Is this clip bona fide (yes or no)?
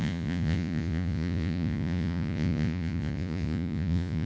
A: no